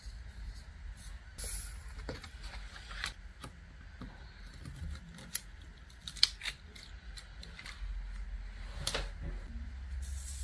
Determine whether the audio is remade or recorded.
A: recorded